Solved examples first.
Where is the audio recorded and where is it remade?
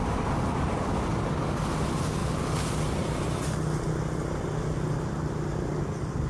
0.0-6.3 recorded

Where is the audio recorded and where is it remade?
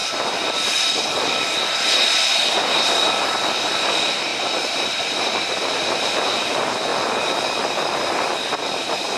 0.0-2.1 recorded; 2.1-4.3 remade; 4.3-4.9 recorded; 4.9-6.9 remade; 6.9-7.6 recorded; 7.6-9.2 remade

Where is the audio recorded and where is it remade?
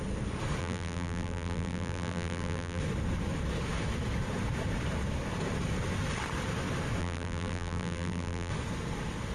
0.0-0.6 recorded; 0.6-2.8 remade; 2.8-7.0 recorded; 7.0-8.5 remade; 8.5-9.3 recorded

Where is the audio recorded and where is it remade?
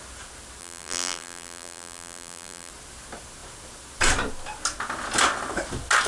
0.0-0.6 recorded; 0.6-2.7 remade; 2.7-6.1 recorded